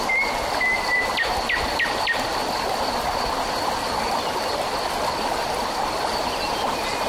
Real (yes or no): yes